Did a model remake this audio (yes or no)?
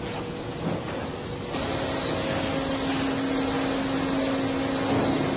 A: no